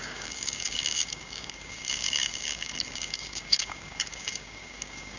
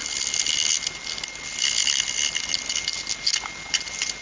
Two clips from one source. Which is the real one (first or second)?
second